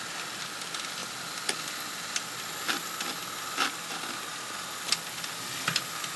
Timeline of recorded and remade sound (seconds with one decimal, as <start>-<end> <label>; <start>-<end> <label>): 0.0-6.2 recorded